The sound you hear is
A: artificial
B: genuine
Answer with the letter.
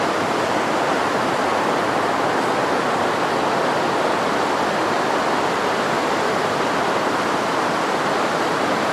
B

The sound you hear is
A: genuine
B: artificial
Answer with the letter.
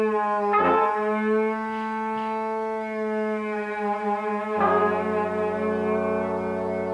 A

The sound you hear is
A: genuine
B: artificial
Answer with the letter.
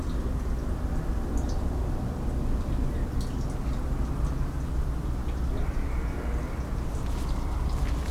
A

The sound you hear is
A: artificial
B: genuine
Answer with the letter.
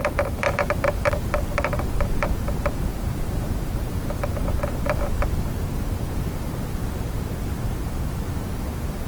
A